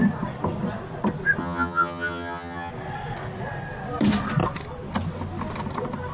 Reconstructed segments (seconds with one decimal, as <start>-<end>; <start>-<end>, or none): 1.4-2.7